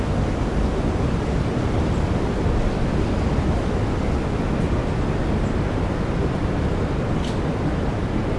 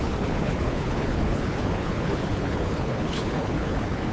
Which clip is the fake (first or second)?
second